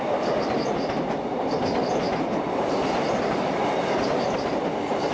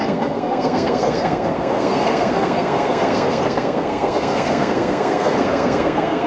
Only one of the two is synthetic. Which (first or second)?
second